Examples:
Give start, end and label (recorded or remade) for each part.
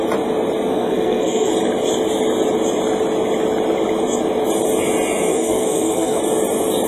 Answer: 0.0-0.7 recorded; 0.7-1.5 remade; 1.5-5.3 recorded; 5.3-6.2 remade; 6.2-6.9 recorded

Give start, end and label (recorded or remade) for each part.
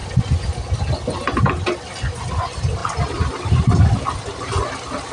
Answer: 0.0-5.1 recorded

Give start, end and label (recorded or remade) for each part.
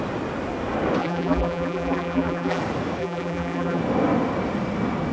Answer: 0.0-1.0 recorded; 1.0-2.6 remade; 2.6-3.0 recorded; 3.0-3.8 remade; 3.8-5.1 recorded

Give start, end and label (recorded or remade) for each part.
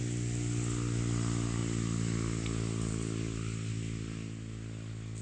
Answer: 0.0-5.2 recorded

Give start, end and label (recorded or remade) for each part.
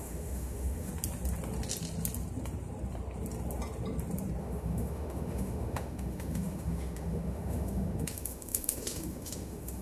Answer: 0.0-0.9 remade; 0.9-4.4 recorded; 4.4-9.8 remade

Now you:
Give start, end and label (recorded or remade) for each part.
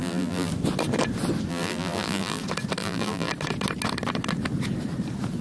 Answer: 0.0-0.5 remade; 0.5-1.5 recorded; 1.5-2.4 remade; 2.4-2.8 recorded; 2.8-3.3 remade; 3.3-5.4 recorded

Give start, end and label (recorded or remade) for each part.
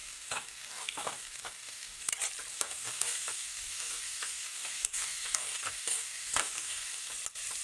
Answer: 0.0-2.1 remade; 2.1-2.5 recorded; 2.5-7.1 remade; 7.1-7.6 recorded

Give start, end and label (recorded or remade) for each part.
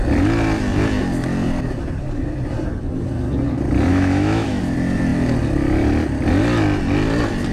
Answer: 0.0-3.9 recorded; 3.9-4.6 remade; 4.6-7.5 recorded